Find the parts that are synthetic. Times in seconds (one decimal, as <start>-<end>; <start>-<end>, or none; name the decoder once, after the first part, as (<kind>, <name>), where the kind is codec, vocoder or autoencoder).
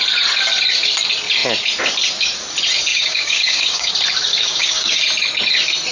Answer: 2.9-3.9 (codec, DAC); 4.3-5.0